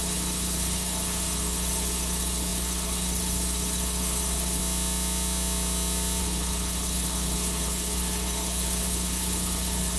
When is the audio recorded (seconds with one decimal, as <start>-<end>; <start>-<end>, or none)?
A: 4.6-6.2